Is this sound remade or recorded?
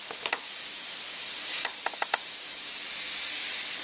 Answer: recorded